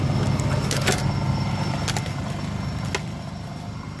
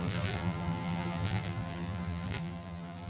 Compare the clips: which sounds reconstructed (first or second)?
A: second